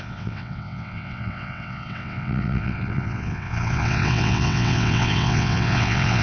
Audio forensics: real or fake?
fake